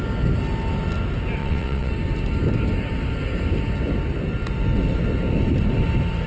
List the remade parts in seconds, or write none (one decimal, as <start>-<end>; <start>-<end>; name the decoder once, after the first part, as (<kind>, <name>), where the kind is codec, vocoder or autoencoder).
1.4-1.9 (vocoder, WaveNeXt)